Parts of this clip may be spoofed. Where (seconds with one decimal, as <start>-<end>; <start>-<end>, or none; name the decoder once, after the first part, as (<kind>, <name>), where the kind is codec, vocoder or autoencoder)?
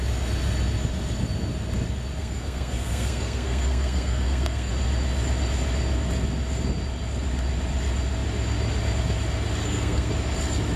2.2-4.7 (codec, SNAC); 9.6-10.1